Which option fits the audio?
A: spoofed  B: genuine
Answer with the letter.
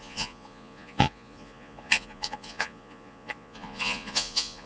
A